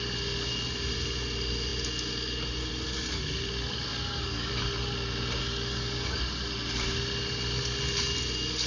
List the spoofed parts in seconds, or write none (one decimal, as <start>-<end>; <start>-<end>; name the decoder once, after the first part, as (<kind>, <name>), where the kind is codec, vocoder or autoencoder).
3.9-4.5 (codec, DAC); 5.4-6.2